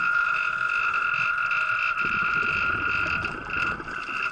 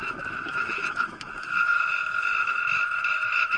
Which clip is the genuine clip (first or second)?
first